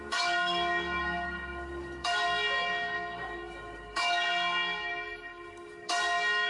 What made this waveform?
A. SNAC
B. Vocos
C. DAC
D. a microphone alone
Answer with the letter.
C